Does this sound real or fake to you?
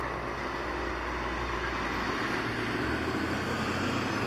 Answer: real